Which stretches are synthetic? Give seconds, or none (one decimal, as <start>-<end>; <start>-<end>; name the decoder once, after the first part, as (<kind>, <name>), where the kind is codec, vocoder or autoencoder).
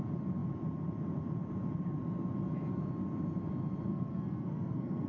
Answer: 3.9-5.1 (codec, SNAC)